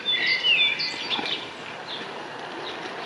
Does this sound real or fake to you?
real